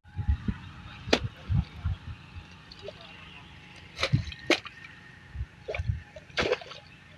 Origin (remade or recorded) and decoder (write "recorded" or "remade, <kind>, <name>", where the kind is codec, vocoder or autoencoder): recorded